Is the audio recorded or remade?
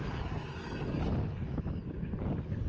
recorded